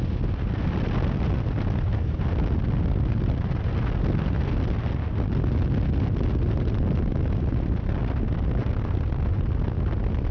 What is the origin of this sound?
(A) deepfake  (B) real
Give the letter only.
B